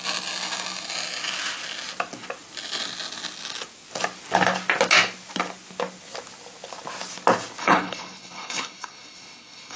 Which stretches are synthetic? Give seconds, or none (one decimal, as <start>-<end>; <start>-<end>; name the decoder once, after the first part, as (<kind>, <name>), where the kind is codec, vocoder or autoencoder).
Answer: 7.6-9.8 (codec, HILCodec)